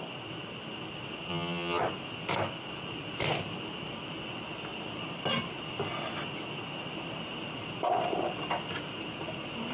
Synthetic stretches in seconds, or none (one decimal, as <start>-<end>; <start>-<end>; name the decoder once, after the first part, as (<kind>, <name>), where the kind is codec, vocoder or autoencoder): 1.3-1.8 (vocoder, HiFi-GAN)